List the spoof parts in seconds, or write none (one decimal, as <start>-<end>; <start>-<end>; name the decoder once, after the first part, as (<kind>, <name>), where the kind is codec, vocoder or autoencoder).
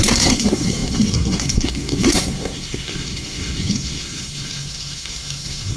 0.0-5.8 (codec, SNAC)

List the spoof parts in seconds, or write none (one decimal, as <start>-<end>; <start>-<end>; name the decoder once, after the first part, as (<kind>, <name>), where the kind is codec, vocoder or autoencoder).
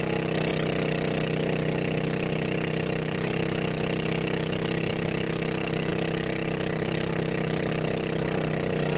none